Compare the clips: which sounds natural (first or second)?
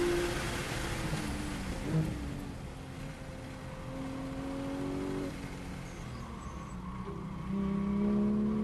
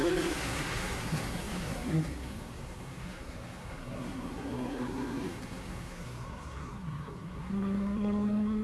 first